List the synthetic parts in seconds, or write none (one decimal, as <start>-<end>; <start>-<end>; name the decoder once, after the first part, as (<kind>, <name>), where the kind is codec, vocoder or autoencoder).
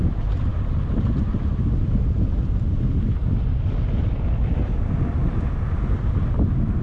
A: 0.0-3.2 (vocoder, BigVGAN v2)